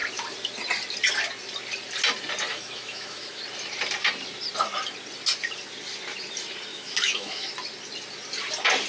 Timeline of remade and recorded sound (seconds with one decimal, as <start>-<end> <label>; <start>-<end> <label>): 0.0-2.5 recorded; 2.5-3.4 remade; 3.4-6.7 recorded; 6.7-7.5 remade; 7.5-8.9 recorded

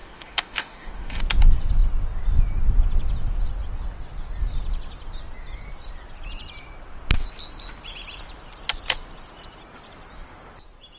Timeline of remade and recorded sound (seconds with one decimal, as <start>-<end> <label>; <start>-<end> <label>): 0.0-1.2 remade; 1.2-11.0 recorded

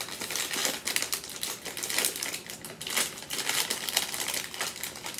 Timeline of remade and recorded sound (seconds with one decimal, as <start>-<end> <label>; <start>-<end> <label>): 0.0-5.2 recorded

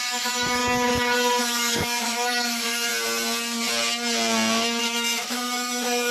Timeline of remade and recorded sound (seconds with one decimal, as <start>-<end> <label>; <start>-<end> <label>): 0.0-0.6 remade; 0.6-1.4 recorded; 1.4-2.9 remade; 2.9-4.8 recorded; 4.8-6.1 remade

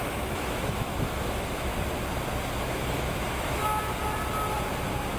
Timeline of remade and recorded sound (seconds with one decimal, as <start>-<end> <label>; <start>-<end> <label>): 0.0-1.7 remade; 1.7-2.6 recorded; 2.6-3.6 remade; 3.6-5.2 recorded

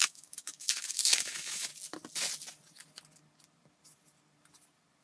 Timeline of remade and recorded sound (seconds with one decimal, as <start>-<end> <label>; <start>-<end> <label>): 0.0-1.7 remade; 1.7-5.0 recorded